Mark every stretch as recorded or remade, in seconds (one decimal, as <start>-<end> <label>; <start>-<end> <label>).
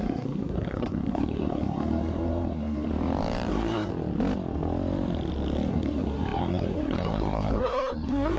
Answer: 0.0-2.9 remade; 2.9-3.5 recorded; 3.5-3.9 remade; 3.9-5.7 recorded; 5.7-8.4 remade